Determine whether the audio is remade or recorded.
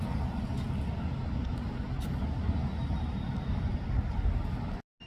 recorded